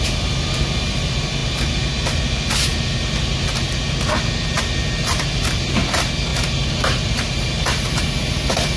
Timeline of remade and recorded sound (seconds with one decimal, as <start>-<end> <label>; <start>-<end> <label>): 0.0-8.8 recorded